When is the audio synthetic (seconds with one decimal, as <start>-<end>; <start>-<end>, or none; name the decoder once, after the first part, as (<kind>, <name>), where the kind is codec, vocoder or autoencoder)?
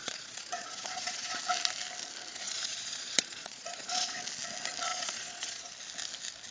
0.0-1.4 (vocoder, Vocos); 2.3-4.2; 4.9-5.7